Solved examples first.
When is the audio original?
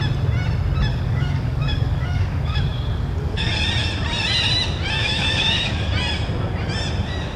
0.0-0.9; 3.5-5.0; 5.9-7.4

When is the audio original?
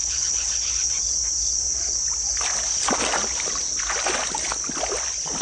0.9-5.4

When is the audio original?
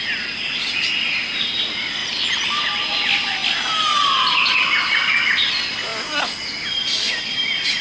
0.0-7.8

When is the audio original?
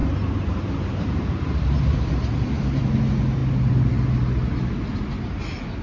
2.1-5.8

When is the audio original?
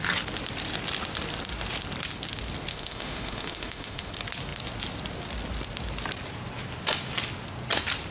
0.0-2.7; 4.1-8.1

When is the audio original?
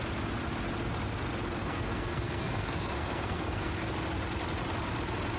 0.0-1.6; 3.9-5.4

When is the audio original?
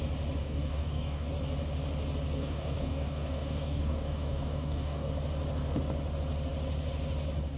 0.0-0.4; 1.3-2.4; 5.1-7.6